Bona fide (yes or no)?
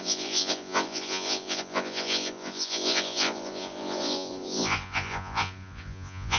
no